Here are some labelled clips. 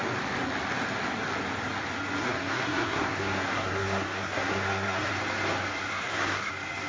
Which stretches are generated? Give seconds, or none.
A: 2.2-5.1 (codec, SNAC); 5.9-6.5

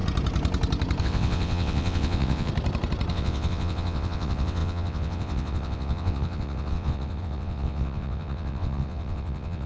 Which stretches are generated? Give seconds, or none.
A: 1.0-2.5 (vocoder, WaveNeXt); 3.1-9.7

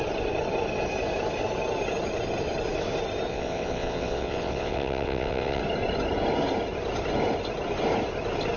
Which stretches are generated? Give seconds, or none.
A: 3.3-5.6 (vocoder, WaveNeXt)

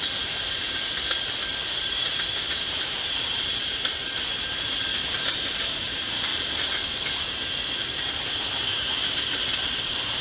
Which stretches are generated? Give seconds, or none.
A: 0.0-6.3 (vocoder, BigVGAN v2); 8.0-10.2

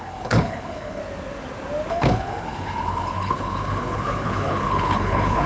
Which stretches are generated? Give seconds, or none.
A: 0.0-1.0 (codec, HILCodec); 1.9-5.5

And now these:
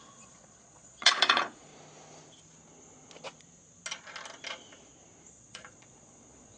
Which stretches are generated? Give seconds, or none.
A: 0.0-1.7 (vocoder, Vocos); 5.3-6.6

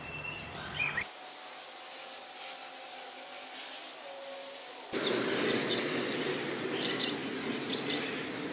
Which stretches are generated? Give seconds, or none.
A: none